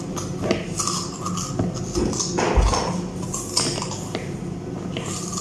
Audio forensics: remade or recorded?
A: recorded